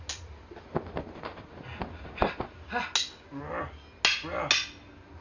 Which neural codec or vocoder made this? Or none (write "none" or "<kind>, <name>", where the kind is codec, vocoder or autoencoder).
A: none